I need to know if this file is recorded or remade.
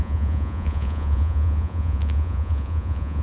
remade